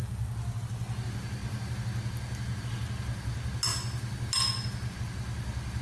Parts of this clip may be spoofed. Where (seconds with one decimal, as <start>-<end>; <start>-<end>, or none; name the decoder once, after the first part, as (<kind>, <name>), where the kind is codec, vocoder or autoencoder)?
none